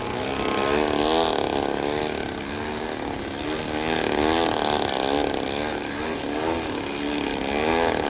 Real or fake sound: real